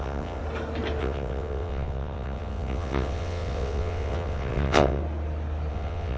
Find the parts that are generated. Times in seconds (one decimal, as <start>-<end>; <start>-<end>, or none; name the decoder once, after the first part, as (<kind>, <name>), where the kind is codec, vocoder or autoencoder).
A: 0.0-0.4 (vocoder, WaveNeXt); 1.0-5.0; 5.7-6.2